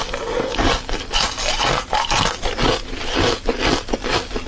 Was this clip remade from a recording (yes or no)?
no